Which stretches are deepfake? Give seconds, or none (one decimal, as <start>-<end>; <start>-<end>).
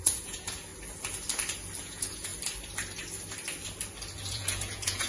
0.0-0.7; 1.8-2.3; 4.3-5.1